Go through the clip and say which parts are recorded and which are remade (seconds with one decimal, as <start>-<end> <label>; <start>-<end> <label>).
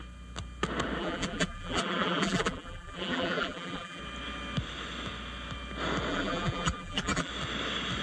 0.0-1.0 recorded; 1.0-4.0 remade; 4.0-6.1 recorded; 6.1-7.3 remade; 7.3-8.0 recorded